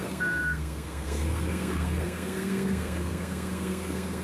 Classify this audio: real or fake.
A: fake